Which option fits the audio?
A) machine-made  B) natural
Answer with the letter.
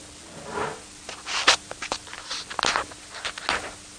B